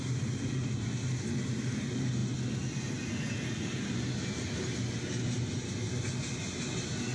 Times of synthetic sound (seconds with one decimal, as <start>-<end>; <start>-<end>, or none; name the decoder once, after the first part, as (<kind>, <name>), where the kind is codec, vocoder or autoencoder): none